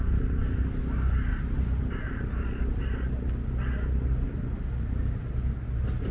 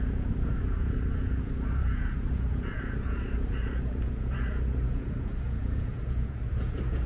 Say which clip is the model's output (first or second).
second